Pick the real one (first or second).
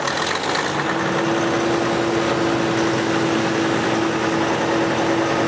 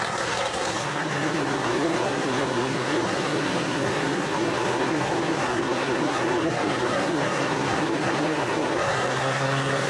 first